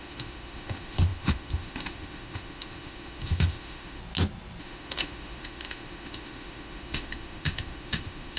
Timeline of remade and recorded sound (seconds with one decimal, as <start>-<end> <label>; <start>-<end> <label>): 0.0-4.0 remade; 4.0-4.6 recorded; 4.6-8.4 remade

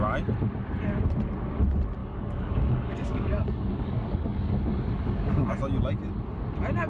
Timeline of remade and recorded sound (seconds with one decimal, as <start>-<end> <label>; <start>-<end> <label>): 0.0-2.0 recorded; 2.0-5.5 remade; 5.5-6.9 recorded